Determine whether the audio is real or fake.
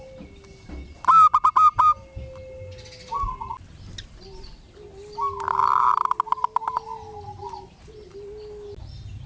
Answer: real